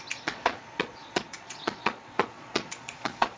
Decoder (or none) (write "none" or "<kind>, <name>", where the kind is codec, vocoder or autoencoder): vocoder, Vocos